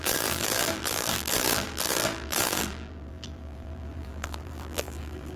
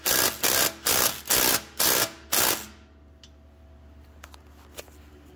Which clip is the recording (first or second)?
second